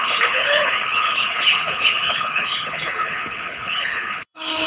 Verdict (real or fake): fake